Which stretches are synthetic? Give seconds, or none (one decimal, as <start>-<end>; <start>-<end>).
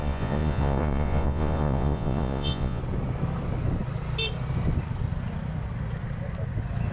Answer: 0.0-2.8